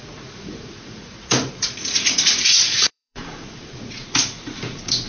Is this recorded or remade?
remade